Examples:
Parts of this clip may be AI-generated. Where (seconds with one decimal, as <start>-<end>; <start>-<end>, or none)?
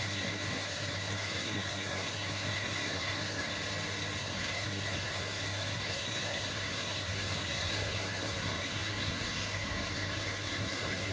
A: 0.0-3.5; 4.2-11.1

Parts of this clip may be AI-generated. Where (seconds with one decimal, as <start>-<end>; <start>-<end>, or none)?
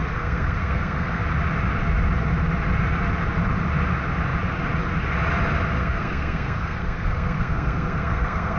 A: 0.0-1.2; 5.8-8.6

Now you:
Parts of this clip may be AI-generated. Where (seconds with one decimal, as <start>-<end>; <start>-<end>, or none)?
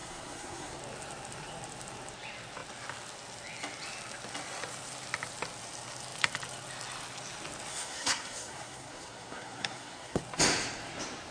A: 0.0-0.8; 7.7-10.2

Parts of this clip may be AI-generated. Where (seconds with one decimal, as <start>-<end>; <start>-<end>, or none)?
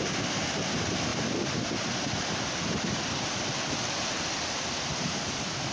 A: none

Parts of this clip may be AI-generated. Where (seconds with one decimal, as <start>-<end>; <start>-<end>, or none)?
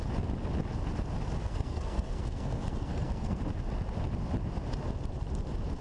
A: 1.4-3.4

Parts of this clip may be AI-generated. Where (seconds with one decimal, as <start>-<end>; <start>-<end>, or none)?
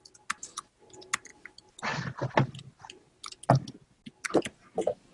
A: none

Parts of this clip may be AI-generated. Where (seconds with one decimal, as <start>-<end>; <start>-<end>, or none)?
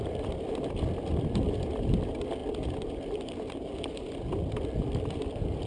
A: none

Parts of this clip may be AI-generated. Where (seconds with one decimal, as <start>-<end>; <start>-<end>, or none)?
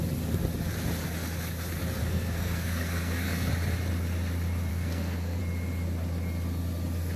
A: 2.0-3.5; 4.7-5.4